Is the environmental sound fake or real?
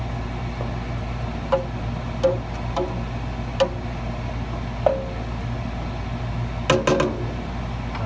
real